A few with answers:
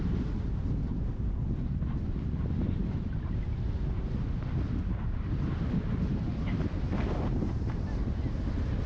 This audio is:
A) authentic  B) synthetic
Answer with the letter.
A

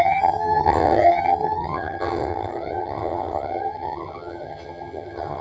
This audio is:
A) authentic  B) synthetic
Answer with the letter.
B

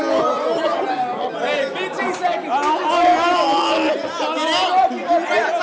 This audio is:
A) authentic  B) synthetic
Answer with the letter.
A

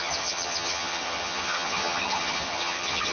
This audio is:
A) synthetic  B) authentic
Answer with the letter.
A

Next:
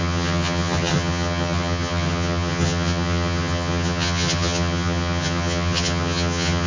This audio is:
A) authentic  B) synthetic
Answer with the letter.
B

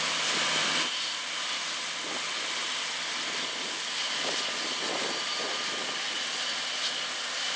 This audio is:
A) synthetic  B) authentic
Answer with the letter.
B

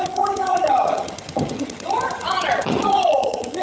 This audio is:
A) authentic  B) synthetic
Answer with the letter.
B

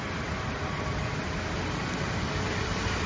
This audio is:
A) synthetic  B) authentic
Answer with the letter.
B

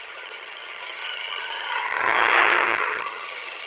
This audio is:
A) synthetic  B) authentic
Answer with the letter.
A